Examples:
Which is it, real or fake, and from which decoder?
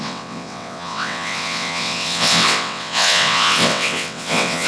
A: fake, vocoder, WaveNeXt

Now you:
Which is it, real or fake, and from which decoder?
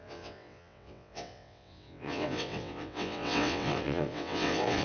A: fake, vocoder, WaveNeXt